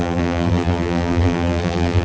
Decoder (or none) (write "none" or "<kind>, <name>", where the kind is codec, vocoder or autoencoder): vocoder, BigVGAN v2